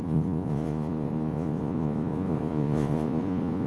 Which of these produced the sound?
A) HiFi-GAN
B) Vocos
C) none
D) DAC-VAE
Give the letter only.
B